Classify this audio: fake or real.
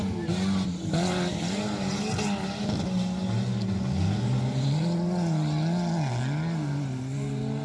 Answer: real